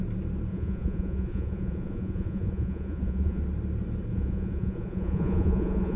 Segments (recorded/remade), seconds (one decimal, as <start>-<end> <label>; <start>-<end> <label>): 0.0-0.5 recorded; 0.5-3.4 remade; 3.4-4.1 recorded; 4.1-6.0 remade